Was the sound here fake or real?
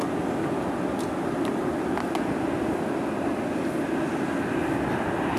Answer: real